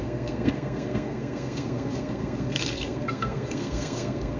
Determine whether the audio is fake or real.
fake